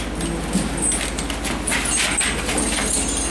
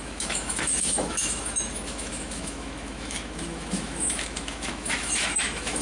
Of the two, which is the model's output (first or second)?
second